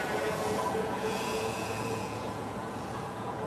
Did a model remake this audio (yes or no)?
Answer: yes